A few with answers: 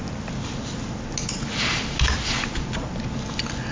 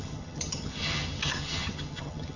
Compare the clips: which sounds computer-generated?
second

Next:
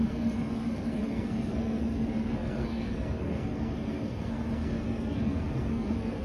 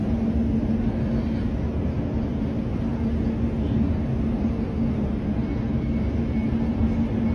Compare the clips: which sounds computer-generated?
first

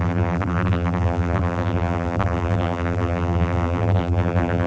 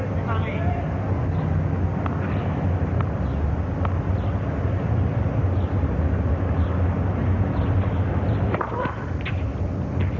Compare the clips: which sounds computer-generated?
first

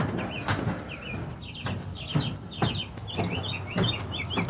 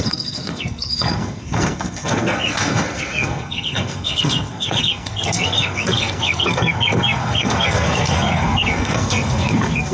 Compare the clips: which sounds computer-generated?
second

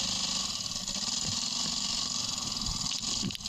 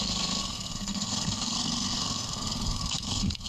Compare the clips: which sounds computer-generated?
second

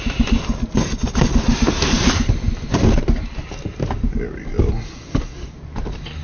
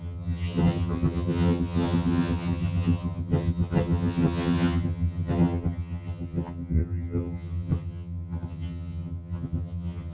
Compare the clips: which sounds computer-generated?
second